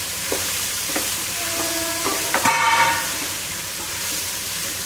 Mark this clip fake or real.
fake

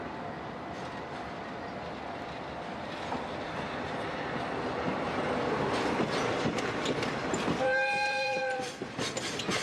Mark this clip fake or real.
fake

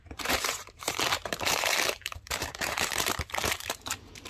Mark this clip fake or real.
fake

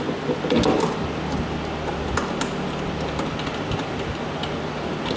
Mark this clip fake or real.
real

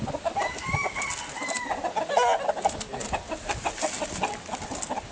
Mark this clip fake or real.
real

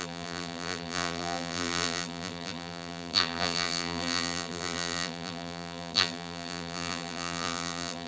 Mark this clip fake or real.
fake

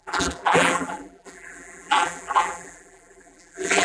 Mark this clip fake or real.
fake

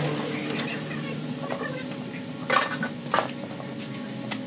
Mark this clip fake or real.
real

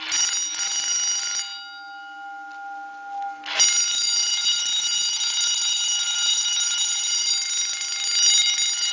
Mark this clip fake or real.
real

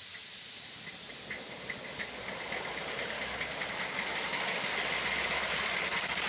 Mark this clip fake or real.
real